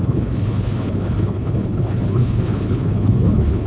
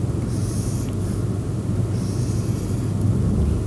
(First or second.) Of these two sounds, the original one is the second